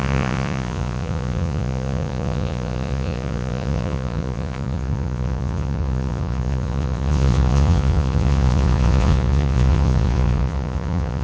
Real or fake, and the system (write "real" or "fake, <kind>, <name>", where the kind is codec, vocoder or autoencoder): fake, vocoder, Vocos